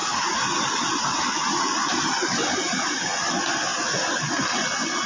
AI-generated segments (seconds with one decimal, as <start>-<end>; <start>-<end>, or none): 0.0-1.2; 1.9-2.7